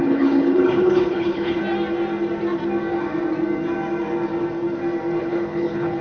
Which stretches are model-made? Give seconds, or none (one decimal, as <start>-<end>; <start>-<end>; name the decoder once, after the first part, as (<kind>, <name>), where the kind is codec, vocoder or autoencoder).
0.0-1.6 (codec, HILCodec); 5.2-6.0